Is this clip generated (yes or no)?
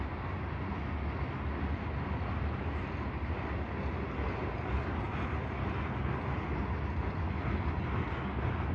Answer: no